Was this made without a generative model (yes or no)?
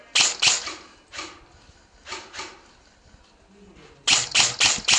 yes